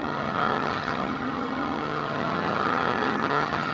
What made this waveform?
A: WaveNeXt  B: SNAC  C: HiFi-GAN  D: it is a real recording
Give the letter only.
C